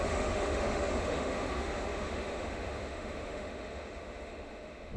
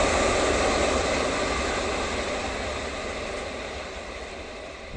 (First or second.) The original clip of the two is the second